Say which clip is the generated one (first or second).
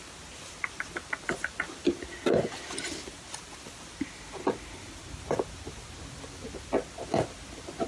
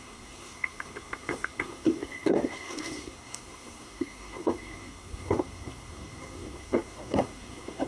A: second